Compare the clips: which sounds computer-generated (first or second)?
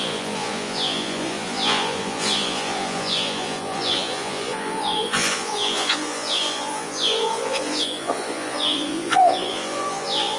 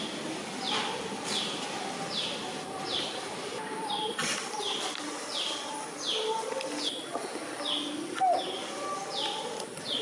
first